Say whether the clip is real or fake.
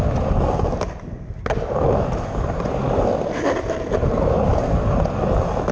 real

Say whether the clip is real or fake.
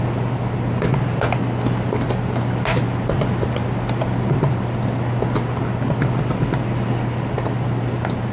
real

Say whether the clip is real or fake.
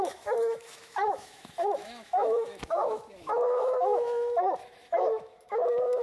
fake